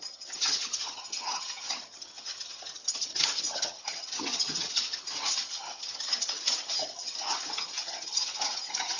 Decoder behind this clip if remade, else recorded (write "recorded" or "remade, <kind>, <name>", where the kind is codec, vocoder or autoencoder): remade, vocoder, HiFi-GAN